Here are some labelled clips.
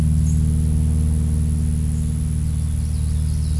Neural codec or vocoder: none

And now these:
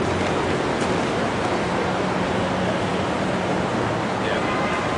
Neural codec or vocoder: none